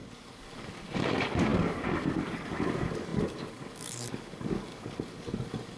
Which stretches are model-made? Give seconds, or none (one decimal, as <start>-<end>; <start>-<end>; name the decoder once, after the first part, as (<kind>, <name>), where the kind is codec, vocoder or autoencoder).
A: 0.0-5.8 (codec, DAC)